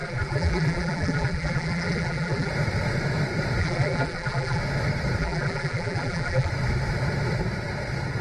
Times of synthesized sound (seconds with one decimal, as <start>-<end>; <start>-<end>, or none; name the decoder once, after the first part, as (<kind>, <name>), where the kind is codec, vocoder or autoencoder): 0.0-2.5 (vocoder, BigVGAN v2); 3.6-4.6; 5.2-6.5

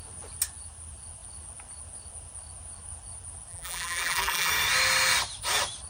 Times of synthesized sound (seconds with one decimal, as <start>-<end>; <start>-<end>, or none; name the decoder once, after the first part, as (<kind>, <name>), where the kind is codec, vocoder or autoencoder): 3.5-4.5 (vocoder, BigVGAN v2)